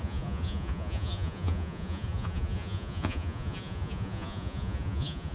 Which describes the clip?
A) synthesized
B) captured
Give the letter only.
A